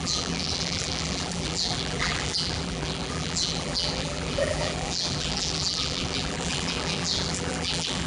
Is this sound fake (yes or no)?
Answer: yes